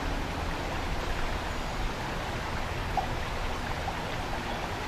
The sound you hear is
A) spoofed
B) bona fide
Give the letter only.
B